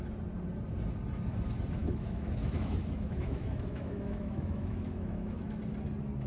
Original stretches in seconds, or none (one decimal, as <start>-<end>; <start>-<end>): 0.0-1.8; 5.6-6.3